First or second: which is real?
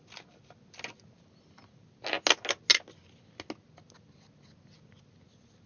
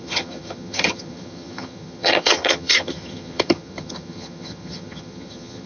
first